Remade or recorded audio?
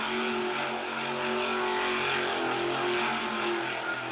recorded